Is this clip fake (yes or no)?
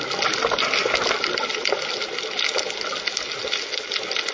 no